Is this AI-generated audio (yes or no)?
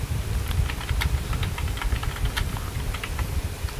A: no